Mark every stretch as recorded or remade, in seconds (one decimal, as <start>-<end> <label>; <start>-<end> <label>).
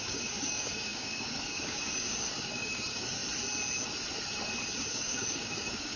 0.0-3.2 remade; 3.2-4.9 recorded; 4.9-6.0 remade